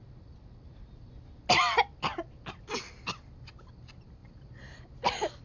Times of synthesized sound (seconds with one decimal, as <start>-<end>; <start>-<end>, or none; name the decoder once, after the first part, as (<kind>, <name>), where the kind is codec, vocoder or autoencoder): 4.2-4.8 (vocoder, BigVGAN v2)